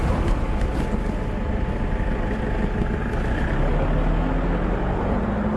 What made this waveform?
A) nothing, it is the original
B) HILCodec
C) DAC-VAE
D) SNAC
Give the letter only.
A